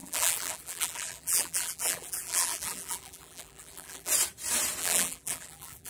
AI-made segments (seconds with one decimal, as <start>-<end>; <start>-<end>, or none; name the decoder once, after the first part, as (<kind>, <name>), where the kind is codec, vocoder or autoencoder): 0.0-4.1 (vocoder, BigVGAN v2); 4.8-5.9